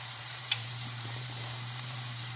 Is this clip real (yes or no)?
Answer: no